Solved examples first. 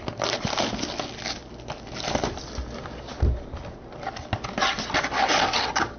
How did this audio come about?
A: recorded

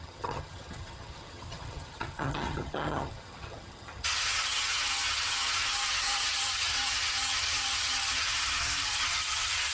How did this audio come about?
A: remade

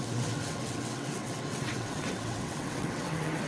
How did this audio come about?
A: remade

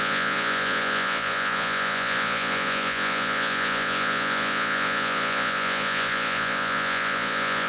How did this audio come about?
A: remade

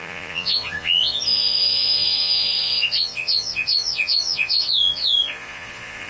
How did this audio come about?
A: remade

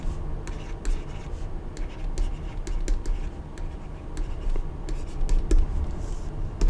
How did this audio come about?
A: recorded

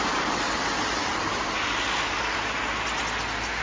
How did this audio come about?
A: recorded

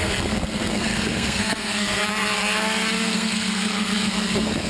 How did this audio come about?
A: remade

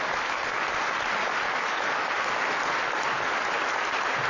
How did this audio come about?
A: recorded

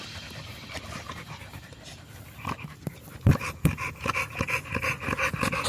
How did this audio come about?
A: recorded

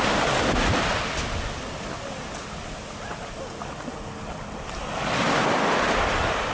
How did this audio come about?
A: recorded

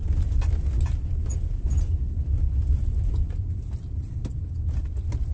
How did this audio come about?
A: recorded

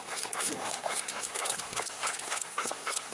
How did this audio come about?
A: remade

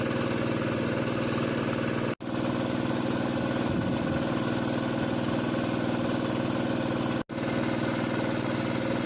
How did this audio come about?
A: recorded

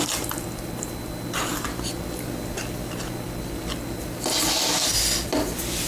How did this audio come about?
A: recorded